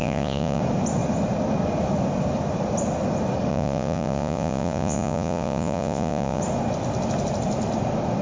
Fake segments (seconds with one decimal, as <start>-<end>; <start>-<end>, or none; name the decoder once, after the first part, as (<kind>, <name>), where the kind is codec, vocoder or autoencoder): 0.0-0.6 (vocoder, Vocos); 3.5-6.4